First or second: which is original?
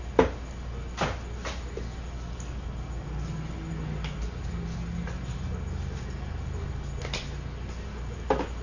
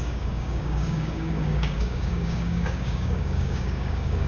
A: first